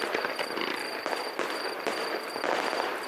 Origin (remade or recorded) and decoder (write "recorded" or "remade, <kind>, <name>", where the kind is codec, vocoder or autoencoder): recorded